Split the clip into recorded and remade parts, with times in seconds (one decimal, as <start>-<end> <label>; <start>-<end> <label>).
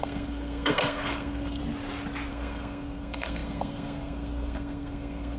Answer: 0.0-1.6 remade; 1.6-2.3 recorded; 2.3-5.4 remade